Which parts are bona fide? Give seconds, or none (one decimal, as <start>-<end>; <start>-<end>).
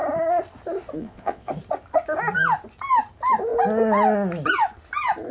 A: 0.0-1.0; 1.5-5.3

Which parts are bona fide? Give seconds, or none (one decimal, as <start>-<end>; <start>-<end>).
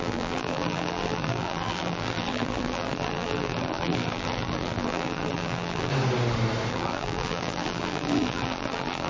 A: 5.9-6.7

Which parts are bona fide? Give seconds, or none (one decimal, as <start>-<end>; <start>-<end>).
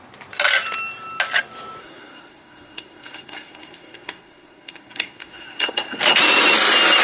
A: 0.0-1.8; 6.0-7.0